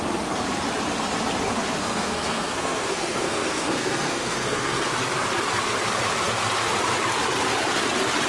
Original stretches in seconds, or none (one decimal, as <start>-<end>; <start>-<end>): 0.0-1.8; 4.9-8.3

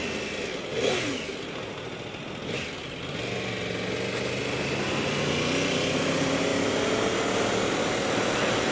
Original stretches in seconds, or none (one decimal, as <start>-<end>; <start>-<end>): 0.0-8.7

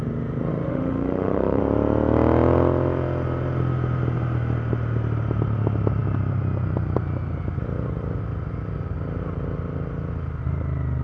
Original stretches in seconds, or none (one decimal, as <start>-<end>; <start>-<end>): 0.0-0.5; 1.6-11.0

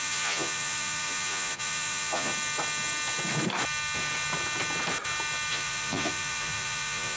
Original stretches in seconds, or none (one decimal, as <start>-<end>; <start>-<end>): 2.3-5.5

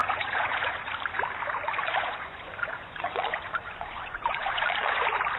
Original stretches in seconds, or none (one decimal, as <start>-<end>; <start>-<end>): 0.9-1.8; 5.0-5.4

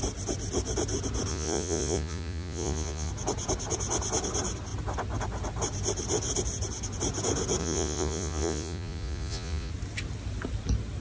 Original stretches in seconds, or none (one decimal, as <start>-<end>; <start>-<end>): 0.0-1.3; 3.1-7.6; 9.7-11.0

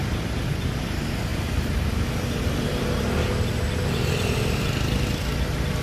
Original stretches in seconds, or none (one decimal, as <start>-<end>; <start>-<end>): 0.0-5.8

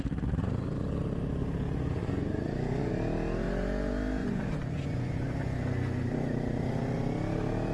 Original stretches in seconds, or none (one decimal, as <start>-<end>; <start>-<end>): 0.0-2.0; 2.9-4.2; 6.0-7.7